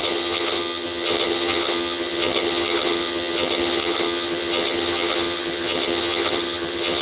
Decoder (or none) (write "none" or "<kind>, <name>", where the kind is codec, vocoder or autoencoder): vocoder, HiFi-GAN